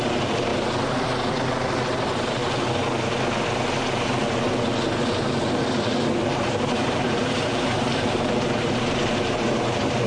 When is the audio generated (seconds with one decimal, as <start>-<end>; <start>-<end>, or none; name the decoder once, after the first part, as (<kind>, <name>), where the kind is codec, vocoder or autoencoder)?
0.0-0.5 (vocoder, BigVGAN v2); 2.0-2.4; 6.3-10.1